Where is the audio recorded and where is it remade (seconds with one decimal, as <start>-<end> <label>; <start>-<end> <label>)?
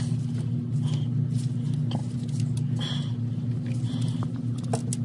0.0-5.0 recorded